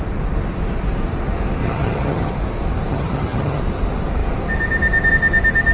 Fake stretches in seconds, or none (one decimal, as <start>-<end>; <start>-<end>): 1.6-2.3; 2.9-3.6